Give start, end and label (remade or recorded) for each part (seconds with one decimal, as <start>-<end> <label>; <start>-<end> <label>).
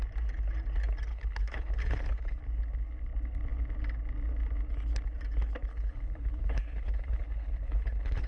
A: 0.0-1.1 recorded; 1.1-2.4 remade; 2.4-5.7 recorded; 5.7-8.3 remade